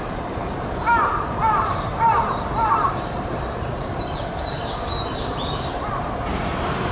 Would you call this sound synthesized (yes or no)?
yes